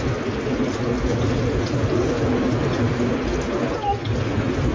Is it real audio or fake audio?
real